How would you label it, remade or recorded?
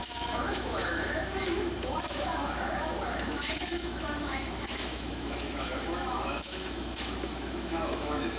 remade